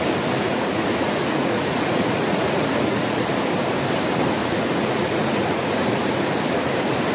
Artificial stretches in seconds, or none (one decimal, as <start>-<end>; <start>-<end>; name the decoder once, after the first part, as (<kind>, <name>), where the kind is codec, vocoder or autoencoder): 0.5-3.2 (vocoder, Vocos); 4.4-6.3